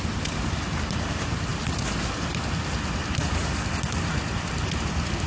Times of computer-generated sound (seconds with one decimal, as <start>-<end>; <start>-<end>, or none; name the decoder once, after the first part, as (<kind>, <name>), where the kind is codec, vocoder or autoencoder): none